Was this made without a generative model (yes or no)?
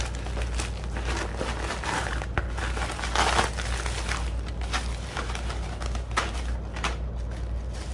yes